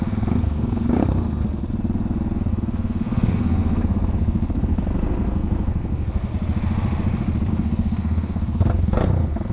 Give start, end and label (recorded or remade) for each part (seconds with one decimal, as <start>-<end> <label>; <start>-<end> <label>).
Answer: 0.0-1.4 remade; 1.4-2.5 recorded; 2.5-6.3 remade; 6.3-7.5 recorded; 7.5-9.5 remade

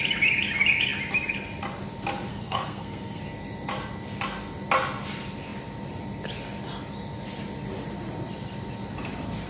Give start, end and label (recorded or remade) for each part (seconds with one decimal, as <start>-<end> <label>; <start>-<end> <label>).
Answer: 0.0-2.3 recorded; 2.3-3.2 remade; 3.2-9.5 recorded

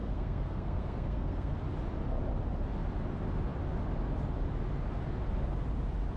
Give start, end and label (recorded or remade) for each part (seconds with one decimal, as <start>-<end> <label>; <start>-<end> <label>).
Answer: 0.0-1.6 remade; 1.6-6.2 recorded

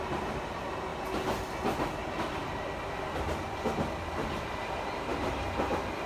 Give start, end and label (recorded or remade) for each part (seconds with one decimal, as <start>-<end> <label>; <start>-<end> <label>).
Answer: 0.0-6.1 recorded

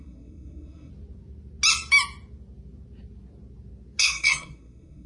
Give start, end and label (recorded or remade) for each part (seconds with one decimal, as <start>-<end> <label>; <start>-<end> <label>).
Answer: 0.0-0.9 remade; 0.9-4.0 recorded; 4.0-5.1 remade

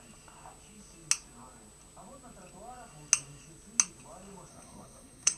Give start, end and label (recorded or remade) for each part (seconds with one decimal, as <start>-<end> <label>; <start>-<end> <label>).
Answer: 0.0-4.5 recorded; 4.5-5.4 remade